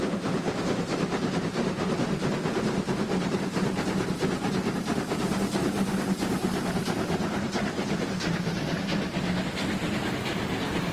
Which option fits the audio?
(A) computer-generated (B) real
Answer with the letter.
A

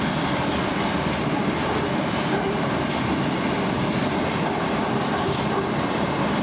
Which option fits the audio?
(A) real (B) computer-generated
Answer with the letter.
A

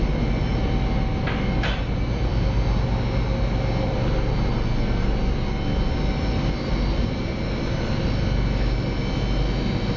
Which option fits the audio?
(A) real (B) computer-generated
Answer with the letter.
A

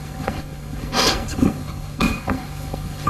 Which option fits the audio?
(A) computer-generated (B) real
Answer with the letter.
A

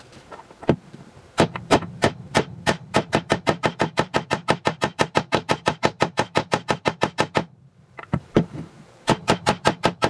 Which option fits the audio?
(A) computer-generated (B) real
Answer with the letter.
A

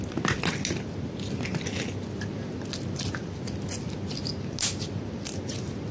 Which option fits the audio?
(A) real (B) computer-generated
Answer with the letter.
A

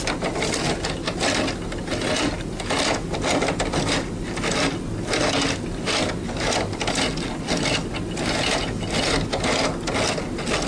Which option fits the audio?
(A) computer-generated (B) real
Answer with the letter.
B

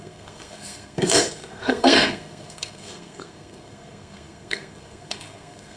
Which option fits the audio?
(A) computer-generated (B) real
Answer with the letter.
A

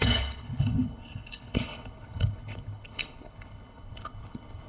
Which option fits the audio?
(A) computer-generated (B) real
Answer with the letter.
A